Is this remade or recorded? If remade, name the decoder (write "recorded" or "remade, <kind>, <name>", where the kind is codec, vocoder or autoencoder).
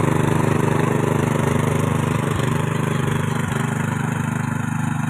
remade, vocoder, BigVGAN v2